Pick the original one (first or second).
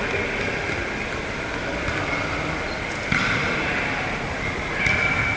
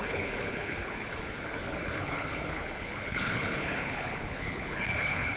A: first